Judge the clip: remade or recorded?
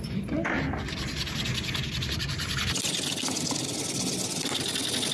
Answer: recorded